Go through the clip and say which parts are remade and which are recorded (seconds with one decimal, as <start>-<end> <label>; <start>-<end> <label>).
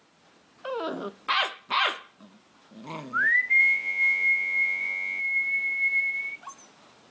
0.0-3.6 recorded; 3.6-5.2 remade; 5.2-7.1 recorded